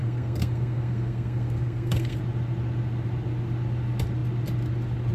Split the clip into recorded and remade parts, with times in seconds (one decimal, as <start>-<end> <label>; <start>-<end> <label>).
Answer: 0.0-2.2 remade; 2.2-5.1 recorded